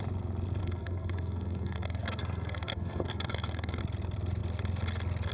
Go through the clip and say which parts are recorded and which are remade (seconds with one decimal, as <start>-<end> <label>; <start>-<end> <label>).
0.0-0.6 recorded; 0.6-3.8 remade; 3.8-5.3 recorded